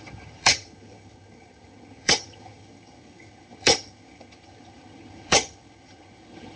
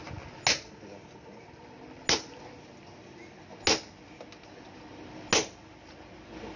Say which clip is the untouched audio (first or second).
second